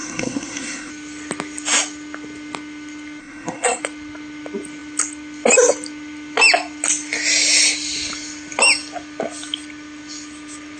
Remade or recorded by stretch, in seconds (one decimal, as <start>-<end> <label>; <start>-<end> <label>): 0.0-0.9 remade; 0.9-3.2 recorded; 3.2-3.8 remade; 3.8-10.8 recorded